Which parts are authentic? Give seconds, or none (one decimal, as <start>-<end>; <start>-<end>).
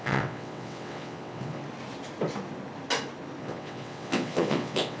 1.6-3.4